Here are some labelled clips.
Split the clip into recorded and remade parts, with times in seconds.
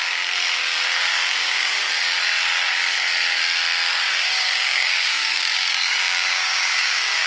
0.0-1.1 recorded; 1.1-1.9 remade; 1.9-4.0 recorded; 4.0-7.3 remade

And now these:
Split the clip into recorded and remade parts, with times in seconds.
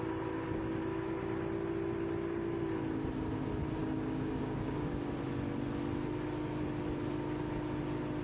0.0-3.8 recorded; 3.8-5.2 remade; 5.2-8.2 recorded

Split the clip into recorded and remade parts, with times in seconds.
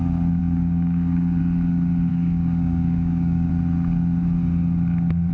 0.0-0.4 recorded; 0.4-1.4 remade; 1.4-2.1 recorded; 2.1-3.5 remade; 3.5-5.3 recorded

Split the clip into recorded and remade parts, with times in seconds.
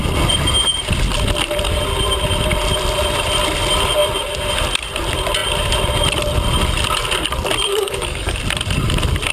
0.0-7.7 recorded; 7.7-8.4 remade; 8.4-9.3 recorded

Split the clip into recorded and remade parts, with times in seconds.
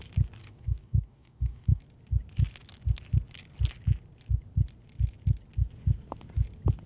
0.0-0.4 recorded; 0.4-1.8 remade; 1.8-6.9 recorded